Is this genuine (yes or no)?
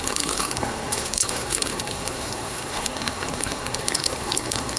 no